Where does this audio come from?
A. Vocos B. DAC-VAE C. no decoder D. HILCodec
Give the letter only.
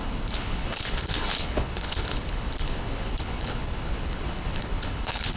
D